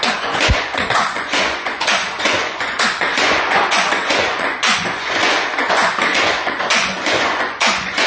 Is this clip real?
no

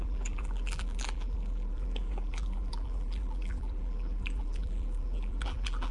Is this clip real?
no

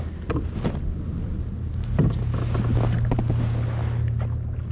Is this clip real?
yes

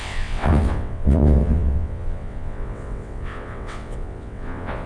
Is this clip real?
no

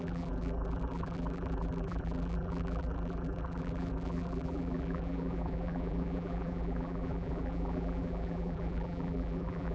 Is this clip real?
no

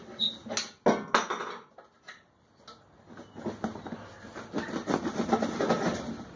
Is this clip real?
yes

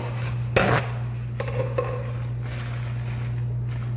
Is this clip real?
yes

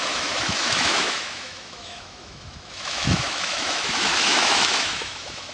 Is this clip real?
no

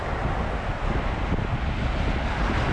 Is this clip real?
yes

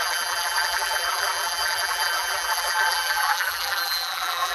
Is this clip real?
no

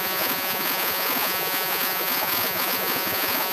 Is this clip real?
no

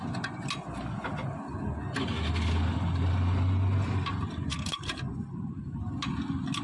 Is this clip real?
yes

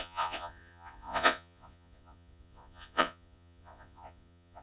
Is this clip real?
no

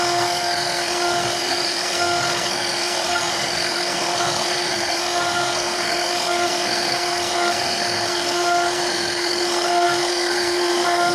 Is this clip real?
no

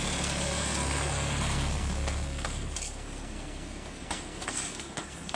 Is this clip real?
no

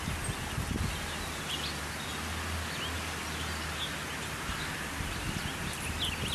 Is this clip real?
yes